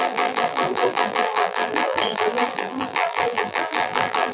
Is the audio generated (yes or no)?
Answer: yes